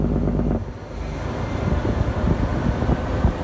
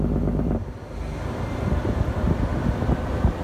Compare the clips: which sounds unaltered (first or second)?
first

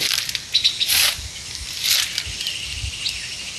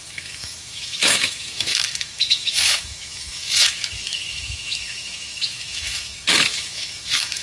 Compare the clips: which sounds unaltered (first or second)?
first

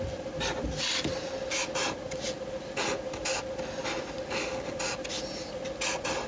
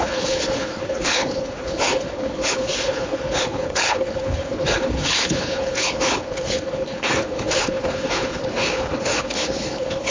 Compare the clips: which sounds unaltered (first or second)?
first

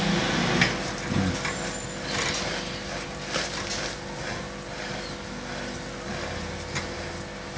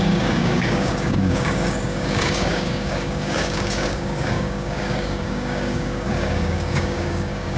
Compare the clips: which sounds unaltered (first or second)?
first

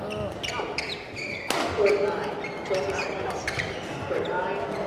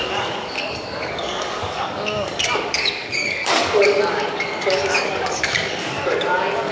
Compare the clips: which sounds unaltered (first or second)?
first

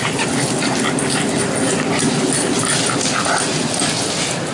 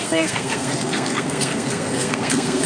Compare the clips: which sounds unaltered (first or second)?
first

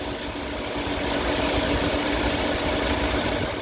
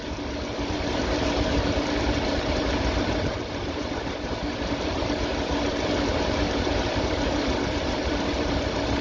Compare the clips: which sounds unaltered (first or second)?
first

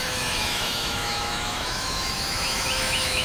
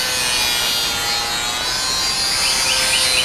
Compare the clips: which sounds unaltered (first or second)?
second